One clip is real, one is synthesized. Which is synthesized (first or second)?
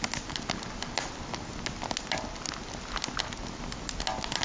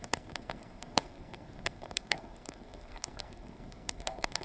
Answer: second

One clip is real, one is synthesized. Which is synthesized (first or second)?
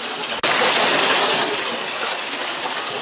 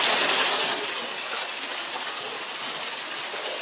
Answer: first